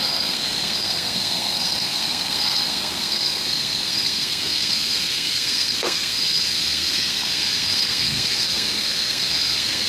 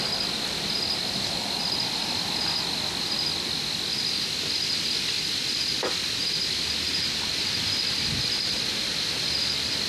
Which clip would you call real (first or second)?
second